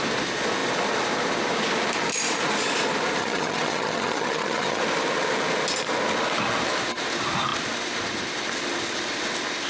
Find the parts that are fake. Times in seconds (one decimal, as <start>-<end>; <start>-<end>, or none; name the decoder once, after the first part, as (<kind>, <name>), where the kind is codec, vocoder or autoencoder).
3.2-4.8 (vocoder, HiFi-GAN)